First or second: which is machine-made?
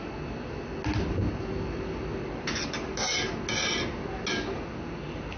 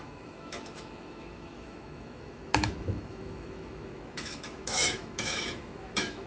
second